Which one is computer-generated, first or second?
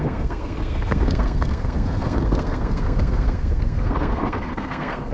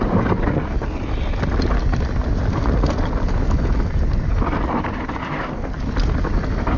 first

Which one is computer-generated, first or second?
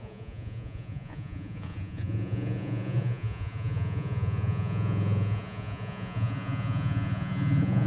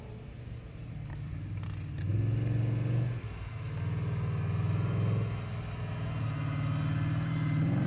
first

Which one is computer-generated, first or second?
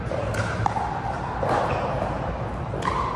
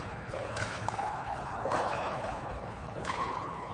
second